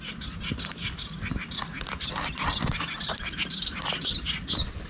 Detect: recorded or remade recorded